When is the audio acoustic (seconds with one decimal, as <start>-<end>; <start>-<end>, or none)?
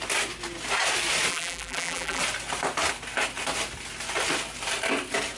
0.0-1.3; 2.2-5.4